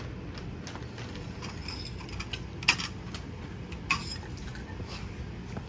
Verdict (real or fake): real